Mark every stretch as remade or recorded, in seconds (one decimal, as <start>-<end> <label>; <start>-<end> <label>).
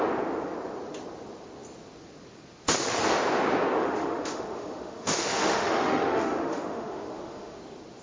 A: 0.0-3.8 recorded; 3.8-7.6 remade; 7.6-8.0 recorded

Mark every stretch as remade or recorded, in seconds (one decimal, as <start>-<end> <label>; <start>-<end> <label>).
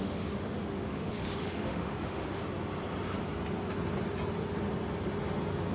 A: 0.0-2.4 remade; 2.4-5.7 recorded